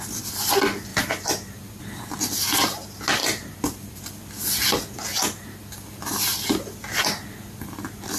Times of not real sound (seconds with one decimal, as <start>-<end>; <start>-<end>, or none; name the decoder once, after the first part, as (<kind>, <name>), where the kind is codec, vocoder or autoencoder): 0.9-1.8 (vocoder, BigVGAN v2); 3.2-4.1